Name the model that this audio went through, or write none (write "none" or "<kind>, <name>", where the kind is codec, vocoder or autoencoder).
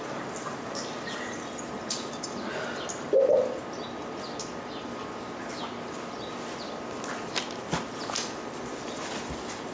none